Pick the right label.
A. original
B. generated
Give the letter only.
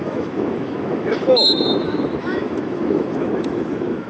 B